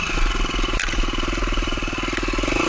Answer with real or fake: fake